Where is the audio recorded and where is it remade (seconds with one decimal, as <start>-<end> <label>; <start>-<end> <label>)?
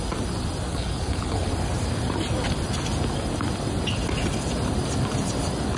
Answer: 0.0-0.7 recorded; 0.7-1.5 remade; 1.5-5.8 recorded